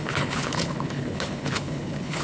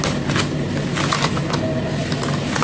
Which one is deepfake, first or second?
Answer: first